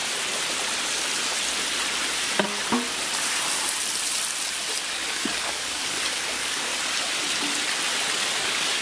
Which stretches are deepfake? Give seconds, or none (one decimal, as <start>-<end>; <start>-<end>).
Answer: 4.9-6.7; 8.4-8.8